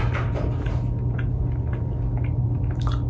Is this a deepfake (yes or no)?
no